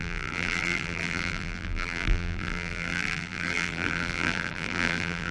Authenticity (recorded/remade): remade